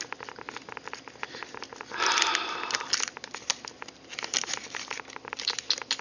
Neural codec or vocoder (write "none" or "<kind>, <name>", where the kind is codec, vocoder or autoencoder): none